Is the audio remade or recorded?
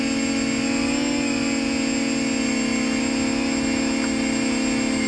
recorded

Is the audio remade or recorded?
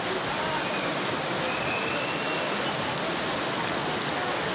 recorded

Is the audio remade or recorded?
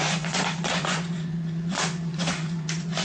remade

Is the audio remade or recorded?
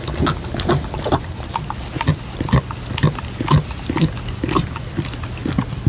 recorded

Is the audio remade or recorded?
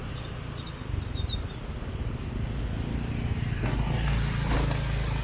recorded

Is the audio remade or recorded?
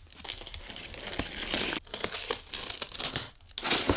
recorded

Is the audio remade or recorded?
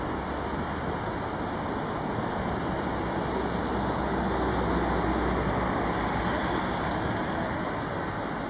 recorded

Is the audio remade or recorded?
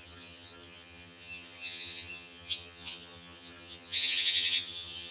remade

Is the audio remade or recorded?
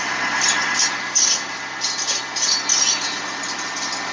recorded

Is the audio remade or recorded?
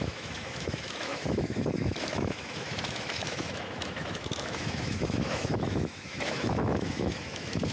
remade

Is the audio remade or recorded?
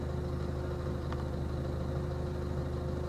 recorded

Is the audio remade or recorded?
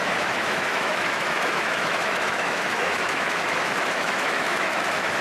remade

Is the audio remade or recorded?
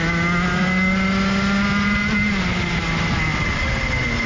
recorded